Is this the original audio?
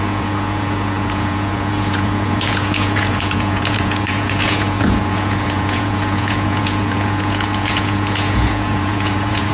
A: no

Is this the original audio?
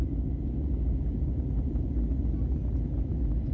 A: yes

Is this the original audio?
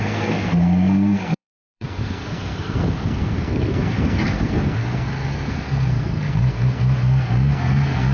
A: no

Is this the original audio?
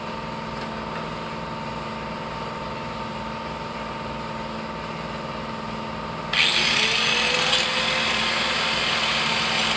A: yes